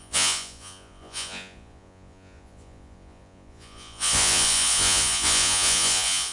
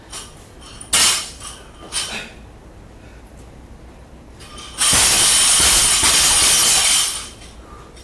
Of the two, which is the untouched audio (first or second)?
second